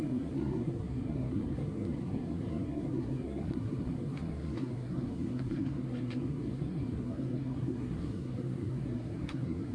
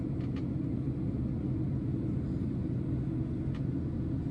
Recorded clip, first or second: second